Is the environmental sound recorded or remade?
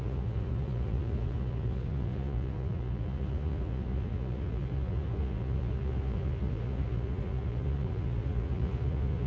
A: remade